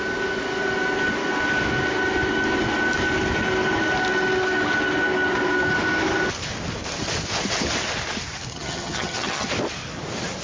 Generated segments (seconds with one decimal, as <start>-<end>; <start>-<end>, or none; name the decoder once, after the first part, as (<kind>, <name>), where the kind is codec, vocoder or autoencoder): 8.5-9.5 (vocoder, HiFi-GAN)